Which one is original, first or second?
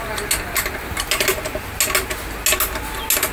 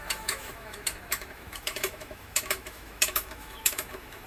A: first